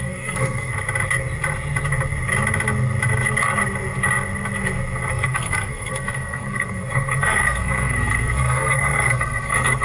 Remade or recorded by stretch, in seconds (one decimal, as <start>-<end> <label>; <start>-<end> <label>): 0.0-0.7 remade; 0.7-5.1 recorded; 5.1-9.8 remade